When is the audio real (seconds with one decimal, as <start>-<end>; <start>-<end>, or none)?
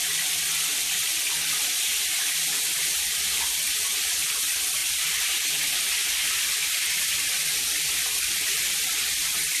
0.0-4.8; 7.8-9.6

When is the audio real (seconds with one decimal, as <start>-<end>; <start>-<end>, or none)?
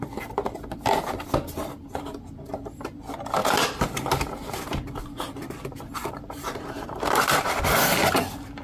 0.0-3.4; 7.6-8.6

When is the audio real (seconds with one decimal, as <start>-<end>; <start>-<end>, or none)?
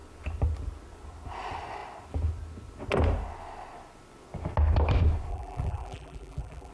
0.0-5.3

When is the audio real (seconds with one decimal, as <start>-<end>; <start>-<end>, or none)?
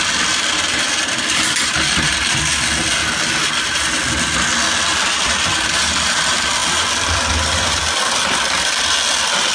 0.0-4.9; 5.8-6.6; 7.3-9.5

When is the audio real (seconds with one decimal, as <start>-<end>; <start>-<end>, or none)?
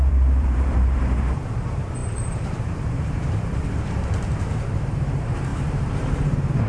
none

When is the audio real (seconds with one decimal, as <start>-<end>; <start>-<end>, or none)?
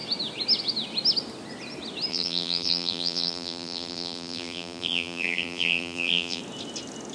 0.0-2.1; 6.4-7.1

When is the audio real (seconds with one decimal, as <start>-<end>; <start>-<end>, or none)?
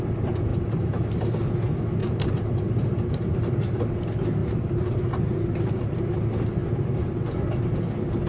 0.0-0.5; 1.3-2.0; 3.5-4.4; 6.0-8.3